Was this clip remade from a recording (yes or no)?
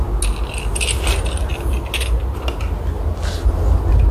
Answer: no